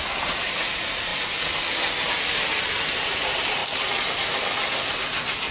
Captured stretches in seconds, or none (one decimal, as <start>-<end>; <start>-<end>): 1.1-3.0; 3.6-5.5

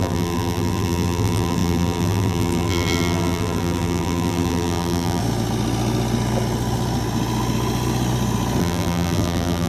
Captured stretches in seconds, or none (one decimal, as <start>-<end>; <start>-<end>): 5.2-8.6

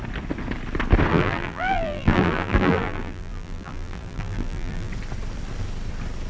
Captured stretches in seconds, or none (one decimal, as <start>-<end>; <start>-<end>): 0.0-1.1; 4.9-6.3

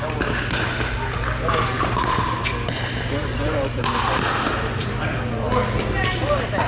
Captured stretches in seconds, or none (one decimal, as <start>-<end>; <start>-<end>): 0.0-3.2; 3.8-6.7

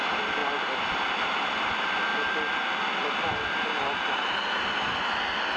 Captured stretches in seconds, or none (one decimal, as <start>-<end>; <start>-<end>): 0.0-5.6

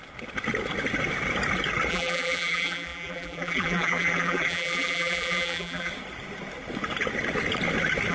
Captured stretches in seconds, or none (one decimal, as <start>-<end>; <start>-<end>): 0.0-1.9; 5.9-8.1

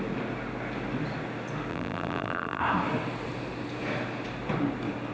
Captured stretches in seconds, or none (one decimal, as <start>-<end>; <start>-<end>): 0.0-1.7; 2.6-5.1

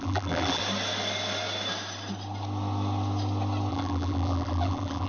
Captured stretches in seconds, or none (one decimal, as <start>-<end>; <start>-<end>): 0.6-3.7